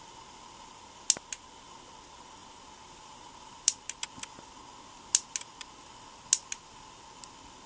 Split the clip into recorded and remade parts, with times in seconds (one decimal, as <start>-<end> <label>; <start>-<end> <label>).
0.0-7.7 recorded